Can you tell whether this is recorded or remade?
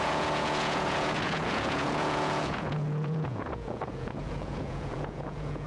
remade